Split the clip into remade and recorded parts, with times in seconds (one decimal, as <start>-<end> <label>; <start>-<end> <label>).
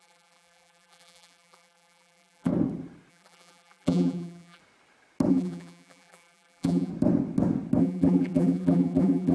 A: 0.0-2.5 remade; 2.5-3.1 recorded; 3.1-4.6 remade; 4.6-5.3 recorded; 5.3-6.9 remade; 6.9-7.8 recorded; 7.8-9.3 remade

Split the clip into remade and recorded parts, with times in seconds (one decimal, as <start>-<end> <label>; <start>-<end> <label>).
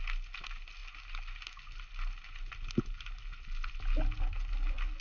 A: 0.0-5.0 recorded